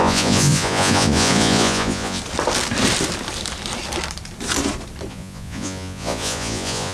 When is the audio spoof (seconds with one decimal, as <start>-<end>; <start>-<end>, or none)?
0.0-2.2; 5.1-6.9